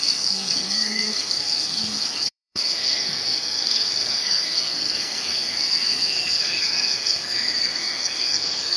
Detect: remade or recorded remade